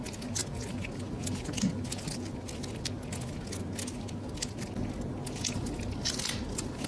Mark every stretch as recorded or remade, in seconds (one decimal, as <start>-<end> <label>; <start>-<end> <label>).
0.0-6.9 recorded